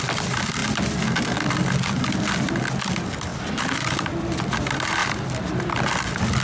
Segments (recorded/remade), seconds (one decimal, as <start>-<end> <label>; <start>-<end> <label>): 0.0-3.3 recorded; 3.3-4.2 remade; 4.2-5.0 recorded; 5.0-5.8 remade; 5.8-6.4 recorded

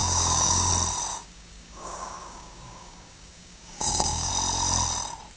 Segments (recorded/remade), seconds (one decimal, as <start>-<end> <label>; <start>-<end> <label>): 0.0-0.7 remade; 0.7-1.1 recorded; 1.1-4.3 remade; 4.3-5.4 recorded